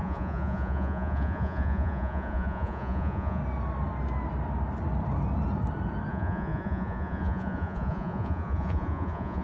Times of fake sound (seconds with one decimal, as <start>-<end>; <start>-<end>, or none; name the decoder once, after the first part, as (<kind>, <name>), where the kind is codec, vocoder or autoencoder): 0.0-3.4 (vocoder, Vocos); 6.1-9.4

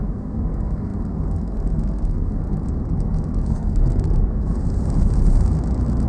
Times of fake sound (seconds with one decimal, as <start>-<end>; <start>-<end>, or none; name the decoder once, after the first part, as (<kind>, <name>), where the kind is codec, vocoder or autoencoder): 0.0-4.8 (codec, SNAC)